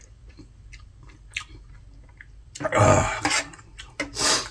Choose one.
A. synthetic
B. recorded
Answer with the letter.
B